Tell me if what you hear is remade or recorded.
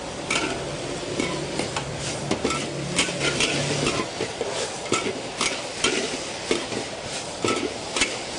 recorded